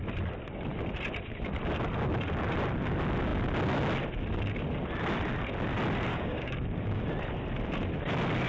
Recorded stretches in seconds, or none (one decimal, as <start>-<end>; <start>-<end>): 0.0-6.1; 7.0-8.5